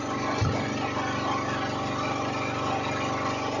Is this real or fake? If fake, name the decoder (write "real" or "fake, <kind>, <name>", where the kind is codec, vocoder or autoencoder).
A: real